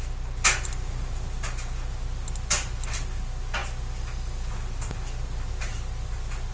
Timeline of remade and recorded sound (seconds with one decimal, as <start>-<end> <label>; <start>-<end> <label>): 0.0-6.5 recorded

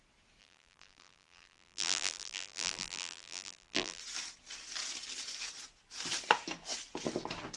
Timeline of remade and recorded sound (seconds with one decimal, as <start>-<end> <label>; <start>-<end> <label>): 0.0-0.4 recorded; 0.4-4.0 remade; 4.0-7.6 recorded

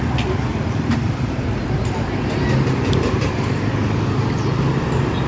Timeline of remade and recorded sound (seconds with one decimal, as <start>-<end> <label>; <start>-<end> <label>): 0.0-0.5 recorded; 0.5-3.7 remade; 3.7-5.3 recorded

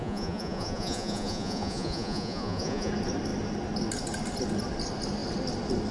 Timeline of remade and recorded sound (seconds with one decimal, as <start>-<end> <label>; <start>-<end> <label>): 0.0-2.9 remade; 2.9-5.9 recorded

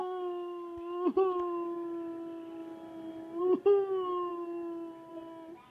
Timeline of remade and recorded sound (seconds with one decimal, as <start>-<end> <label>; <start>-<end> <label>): 0.0-5.7 recorded

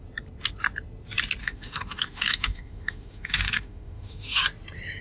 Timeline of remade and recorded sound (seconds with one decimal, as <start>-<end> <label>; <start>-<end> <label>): 0.0-1.4 recorded; 1.4-4.4 remade; 4.4-5.0 recorded

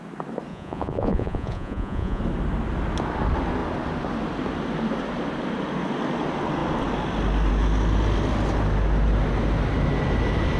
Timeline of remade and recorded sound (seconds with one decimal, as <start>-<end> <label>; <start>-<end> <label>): 0.0-0.5 recorded; 0.5-2.2 remade; 2.2-10.6 recorded

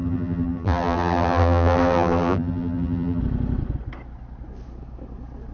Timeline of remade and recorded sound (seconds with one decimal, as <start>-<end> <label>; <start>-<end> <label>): 0.0-3.2 remade; 3.2-5.5 recorded